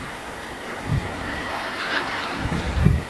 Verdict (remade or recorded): remade